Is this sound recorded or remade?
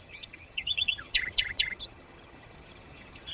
remade